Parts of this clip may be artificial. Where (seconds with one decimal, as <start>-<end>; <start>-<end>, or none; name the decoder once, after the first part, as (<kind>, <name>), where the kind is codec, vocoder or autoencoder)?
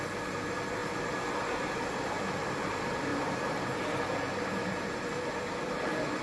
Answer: none